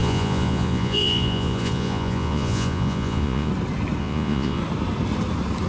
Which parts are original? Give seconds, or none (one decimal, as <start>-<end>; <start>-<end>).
3.5-4.0; 4.6-5.7